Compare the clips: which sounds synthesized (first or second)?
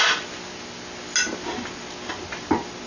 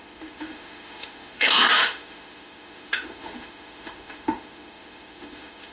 second